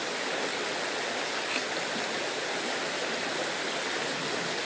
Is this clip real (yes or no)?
yes